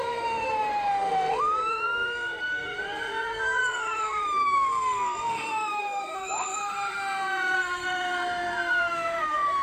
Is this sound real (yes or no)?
no